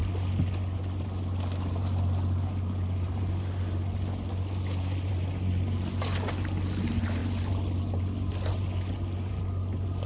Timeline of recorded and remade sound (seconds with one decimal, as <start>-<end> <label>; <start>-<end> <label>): 0.0-10.1 recorded